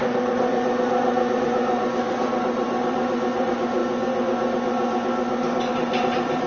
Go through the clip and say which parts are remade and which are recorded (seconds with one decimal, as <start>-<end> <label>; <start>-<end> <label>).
0.0-3.8 remade; 3.8-5.7 recorded; 5.7-6.5 remade